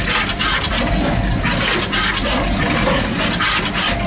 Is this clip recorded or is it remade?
recorded